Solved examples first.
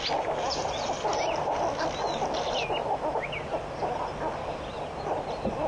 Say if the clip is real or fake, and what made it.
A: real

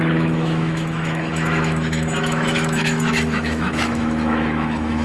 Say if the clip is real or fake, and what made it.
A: fake, autoencoder, DAC-VAE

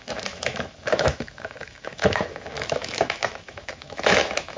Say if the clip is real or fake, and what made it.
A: fake, autoencoder, DAC-VAE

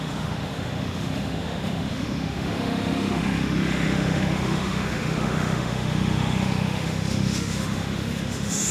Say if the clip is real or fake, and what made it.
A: fake, autoencoder, DAC-VAE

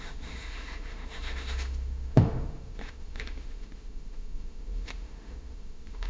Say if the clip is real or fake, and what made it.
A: fake, autoencoder, DAC-VAE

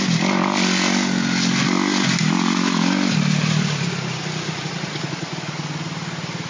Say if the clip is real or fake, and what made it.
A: real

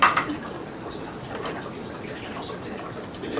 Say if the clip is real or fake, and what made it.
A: real